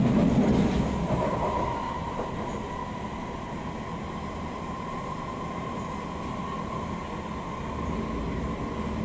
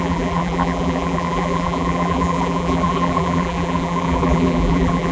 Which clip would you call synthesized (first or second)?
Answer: second